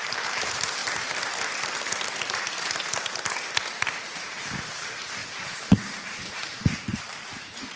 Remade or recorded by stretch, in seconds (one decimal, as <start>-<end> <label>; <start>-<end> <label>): 0.0-0.8 remade; 0.8-4.0 recorded; 4.0-7.8 remade